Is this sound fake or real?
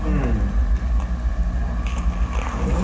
real